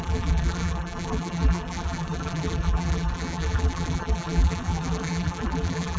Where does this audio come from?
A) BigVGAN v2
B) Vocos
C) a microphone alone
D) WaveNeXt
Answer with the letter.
A